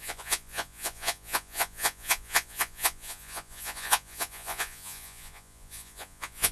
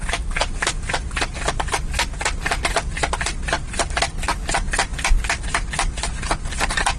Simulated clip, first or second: first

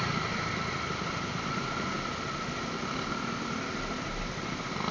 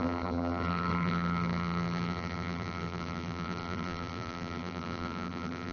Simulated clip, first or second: second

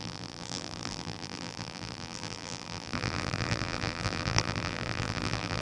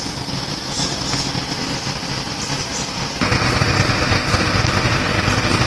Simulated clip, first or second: first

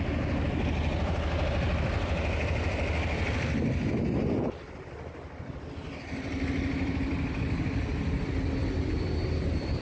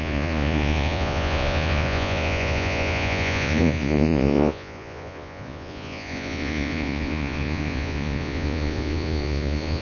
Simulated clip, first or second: second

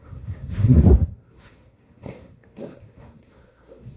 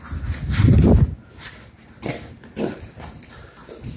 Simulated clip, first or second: first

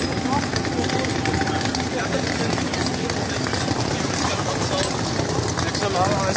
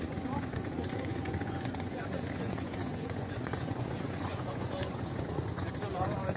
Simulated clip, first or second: second